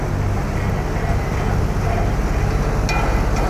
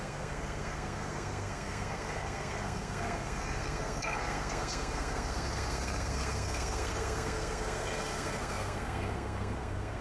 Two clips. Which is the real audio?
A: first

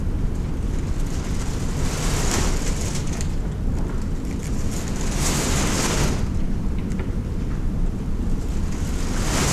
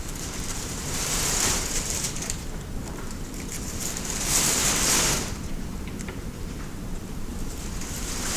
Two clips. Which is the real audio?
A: first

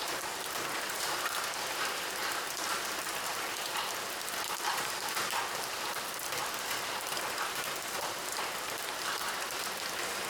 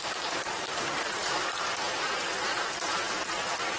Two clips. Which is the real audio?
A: first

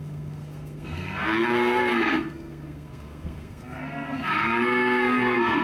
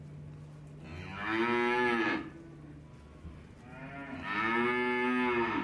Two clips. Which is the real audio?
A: second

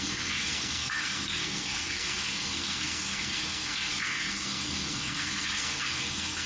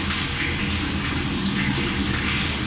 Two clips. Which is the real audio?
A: second